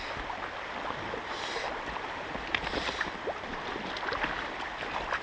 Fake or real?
real